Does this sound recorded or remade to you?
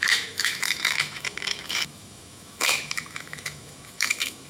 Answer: remade